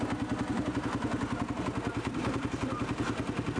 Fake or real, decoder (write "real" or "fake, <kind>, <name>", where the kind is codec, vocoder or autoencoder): real